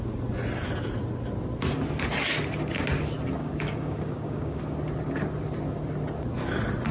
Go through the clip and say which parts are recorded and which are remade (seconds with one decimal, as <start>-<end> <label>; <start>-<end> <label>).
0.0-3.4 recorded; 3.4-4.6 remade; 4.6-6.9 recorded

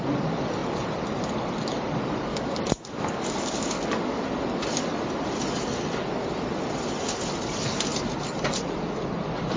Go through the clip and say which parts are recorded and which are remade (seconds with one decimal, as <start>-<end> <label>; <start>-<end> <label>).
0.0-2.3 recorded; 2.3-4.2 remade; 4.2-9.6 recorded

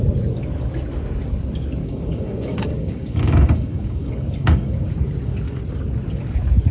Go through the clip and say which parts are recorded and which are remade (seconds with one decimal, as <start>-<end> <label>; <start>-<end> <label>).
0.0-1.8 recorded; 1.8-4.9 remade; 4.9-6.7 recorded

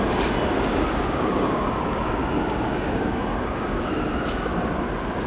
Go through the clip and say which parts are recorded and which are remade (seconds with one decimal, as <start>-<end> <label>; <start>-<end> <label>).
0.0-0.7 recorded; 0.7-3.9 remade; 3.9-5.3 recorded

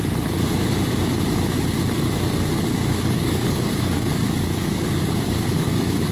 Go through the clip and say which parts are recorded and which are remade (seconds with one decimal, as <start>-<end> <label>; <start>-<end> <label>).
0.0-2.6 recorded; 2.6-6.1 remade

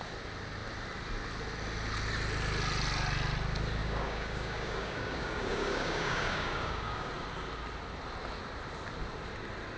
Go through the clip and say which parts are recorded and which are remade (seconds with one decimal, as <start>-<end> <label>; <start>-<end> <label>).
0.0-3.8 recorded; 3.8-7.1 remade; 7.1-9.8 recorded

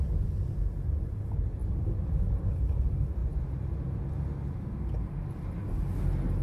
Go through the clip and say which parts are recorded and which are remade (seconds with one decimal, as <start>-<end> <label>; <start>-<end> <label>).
0.0-6.4 recorded